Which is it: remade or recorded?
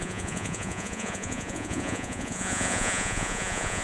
remade